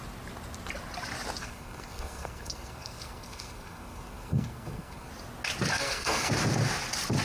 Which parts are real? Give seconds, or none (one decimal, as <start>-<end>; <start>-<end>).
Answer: 0.0-1.4; 5.1-5.7; 6.3-7.2